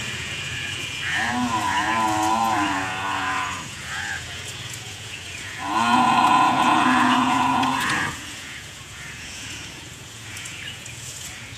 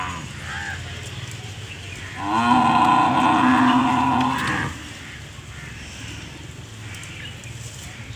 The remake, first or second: first